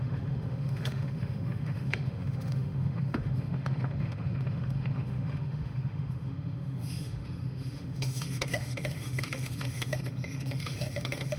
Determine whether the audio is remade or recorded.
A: remade